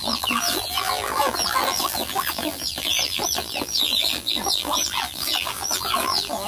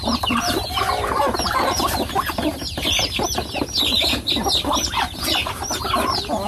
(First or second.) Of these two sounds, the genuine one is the second